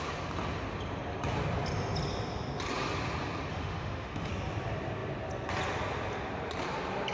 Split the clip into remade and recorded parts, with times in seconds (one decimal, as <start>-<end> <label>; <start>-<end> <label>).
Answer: 0.0-3.5 recorded; 3.5-4.3 remade; 4.3-7.1 recorded